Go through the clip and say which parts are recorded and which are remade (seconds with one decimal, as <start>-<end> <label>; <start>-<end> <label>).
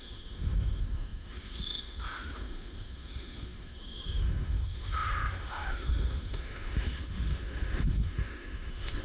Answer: 0.0-9.0 remade